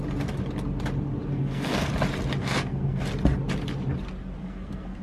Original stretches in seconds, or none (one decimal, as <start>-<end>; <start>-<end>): 0.0-1.3; 1.9-2.4; 3.0-4.4